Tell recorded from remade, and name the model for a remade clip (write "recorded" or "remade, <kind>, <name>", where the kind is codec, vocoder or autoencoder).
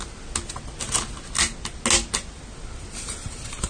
recorded